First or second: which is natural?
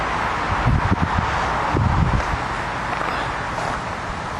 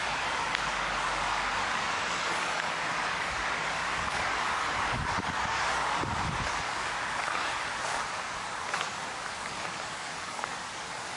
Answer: first